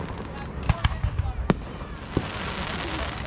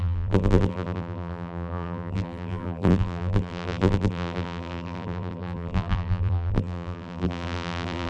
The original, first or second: first